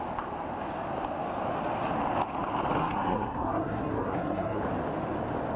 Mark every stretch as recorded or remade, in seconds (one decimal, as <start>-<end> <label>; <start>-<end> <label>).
0.0-2.8 recorded; 2.8-4.6 remade; 4.6-5.6 recorded